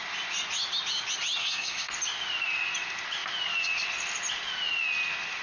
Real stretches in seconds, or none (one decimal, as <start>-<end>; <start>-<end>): 0.0-1.4; 1.9-5.4